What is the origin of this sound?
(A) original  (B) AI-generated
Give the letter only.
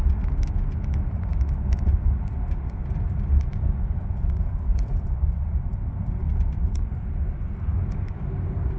A